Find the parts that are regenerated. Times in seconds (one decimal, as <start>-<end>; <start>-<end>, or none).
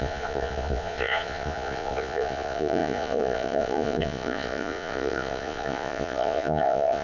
0.0-7.0